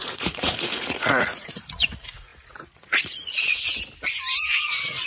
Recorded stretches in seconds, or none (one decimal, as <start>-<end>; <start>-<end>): 3.7-4.4

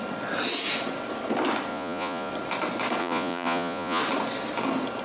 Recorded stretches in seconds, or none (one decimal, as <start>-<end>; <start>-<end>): 0.0-1.7; 2.3-3.0; 4.0-5.0

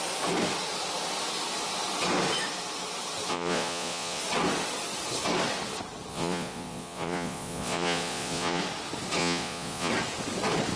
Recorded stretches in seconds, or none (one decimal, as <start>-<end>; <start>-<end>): 0.0-3.3; 4.2-6.1; 8.6-9.2; 9.9-10.8

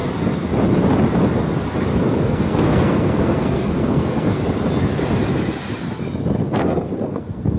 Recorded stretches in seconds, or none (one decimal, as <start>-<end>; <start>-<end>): 0.0-1.9; 4.4-6.4

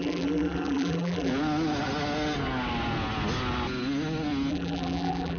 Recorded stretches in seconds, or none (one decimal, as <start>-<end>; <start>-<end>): 1.3-4.5

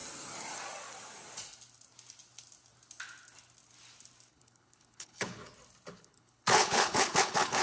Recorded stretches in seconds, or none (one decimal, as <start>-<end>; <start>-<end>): 0.0-4.3; 5.4-5.9